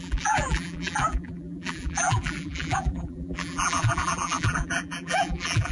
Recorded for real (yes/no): no